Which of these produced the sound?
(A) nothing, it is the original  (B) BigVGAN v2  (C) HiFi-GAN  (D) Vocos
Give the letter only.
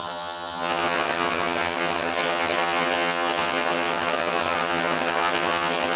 C